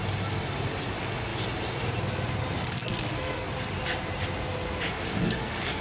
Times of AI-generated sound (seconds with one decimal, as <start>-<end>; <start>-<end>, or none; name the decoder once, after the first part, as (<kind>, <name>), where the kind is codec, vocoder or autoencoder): 2.6-3.5 (codec, SNAC); 5.2-5.8